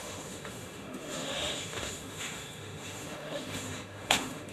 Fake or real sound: fake